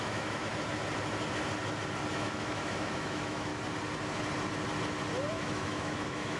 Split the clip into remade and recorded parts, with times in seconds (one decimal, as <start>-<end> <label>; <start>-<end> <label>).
0.0-0.5 remade; 0.5-2.1 recorded; 2.1-3.5 remade; 3.5-5.3 recorded; 5.3-6.4 remade